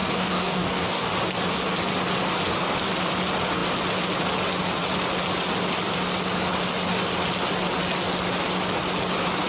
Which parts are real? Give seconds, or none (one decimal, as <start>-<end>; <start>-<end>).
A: 1.1-9.5